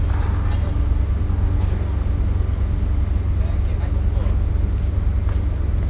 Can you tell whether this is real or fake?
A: real